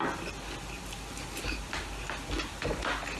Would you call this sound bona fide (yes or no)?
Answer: yes